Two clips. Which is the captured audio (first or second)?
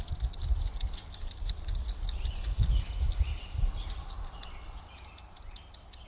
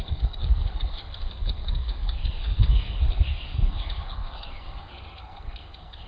first